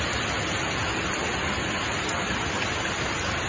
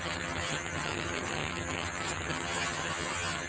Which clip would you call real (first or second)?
first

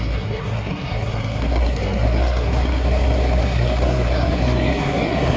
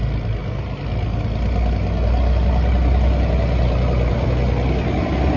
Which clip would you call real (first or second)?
second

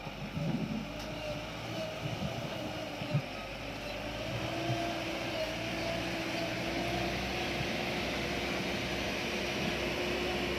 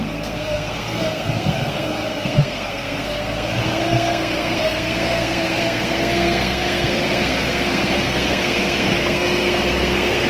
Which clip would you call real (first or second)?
first